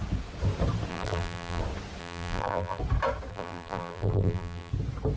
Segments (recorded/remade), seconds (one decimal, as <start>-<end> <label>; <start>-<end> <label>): 0.0-0.9 recorded; 0.9-1.6 remade; 1.6-2.0 recorded; 2.0-2.8 remade; 2.8-3.3 recorded; 3.3-4.7 remade; 4.7-5.2 recorded